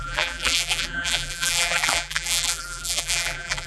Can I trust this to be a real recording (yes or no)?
no